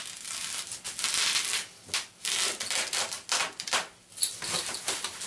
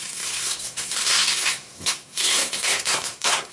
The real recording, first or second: first